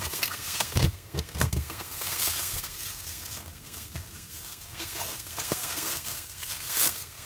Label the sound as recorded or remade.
remade